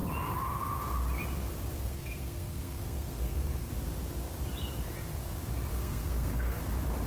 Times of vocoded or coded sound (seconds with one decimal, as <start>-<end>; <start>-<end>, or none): 1.9-3.7; 5.7-6.6